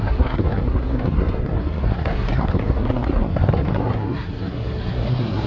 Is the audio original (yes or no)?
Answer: no